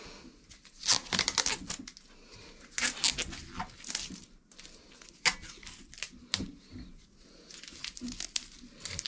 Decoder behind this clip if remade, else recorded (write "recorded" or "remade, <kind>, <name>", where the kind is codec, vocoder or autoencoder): recorded